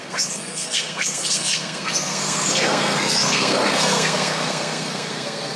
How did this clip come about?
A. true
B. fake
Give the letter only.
B